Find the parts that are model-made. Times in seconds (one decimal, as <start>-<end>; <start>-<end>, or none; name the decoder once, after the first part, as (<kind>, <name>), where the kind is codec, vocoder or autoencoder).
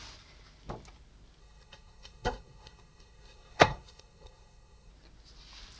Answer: 1.4-4.9 (codec, SNAC)